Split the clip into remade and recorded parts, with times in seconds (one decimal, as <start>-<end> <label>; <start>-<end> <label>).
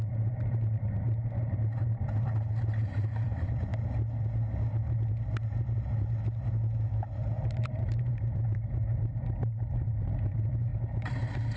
0.0-3.7 remade; 3.7-7.6 recorded; 7.6-11.6 remade